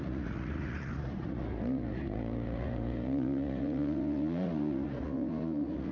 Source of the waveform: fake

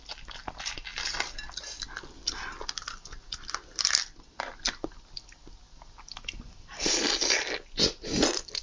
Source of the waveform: real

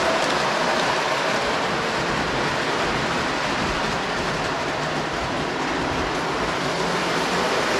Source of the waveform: fake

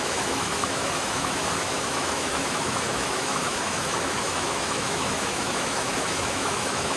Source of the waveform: fake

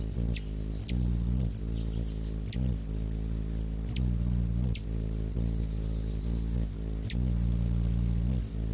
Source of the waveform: real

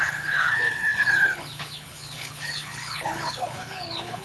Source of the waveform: fake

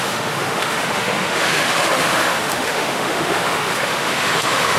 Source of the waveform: fake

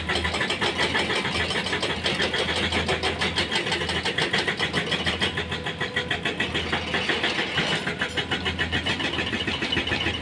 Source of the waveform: real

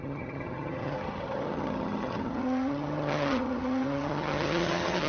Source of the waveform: fake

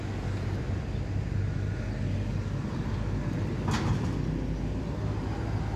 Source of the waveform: real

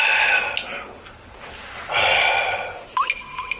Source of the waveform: real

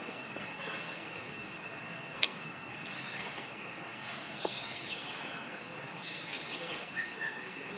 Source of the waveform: fake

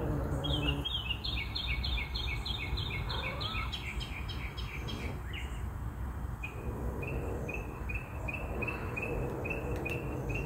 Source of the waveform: real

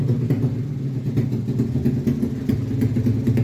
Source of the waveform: real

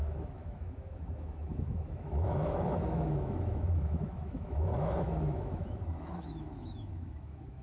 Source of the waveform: fake